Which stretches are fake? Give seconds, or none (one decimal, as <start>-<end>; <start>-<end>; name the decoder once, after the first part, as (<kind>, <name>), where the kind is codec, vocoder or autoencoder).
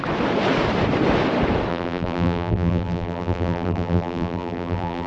1.7-5.1 (vocoder, BigVGAN v2)